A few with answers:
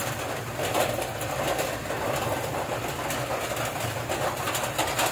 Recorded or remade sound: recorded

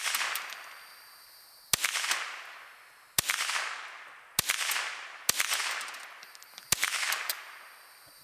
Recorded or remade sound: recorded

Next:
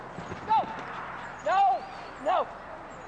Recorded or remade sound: recorded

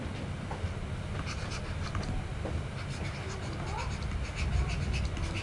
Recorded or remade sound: recorded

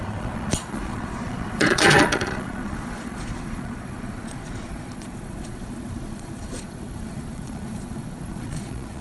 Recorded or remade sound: remade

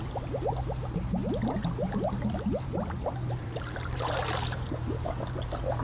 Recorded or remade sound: recorded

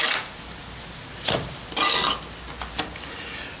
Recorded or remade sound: recorded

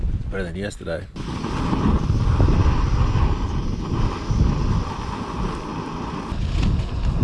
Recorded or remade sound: recorded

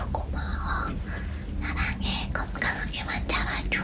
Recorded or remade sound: recorded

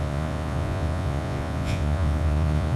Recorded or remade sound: remade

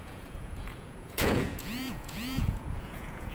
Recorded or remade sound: remade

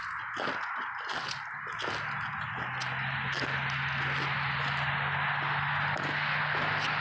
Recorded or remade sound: recorded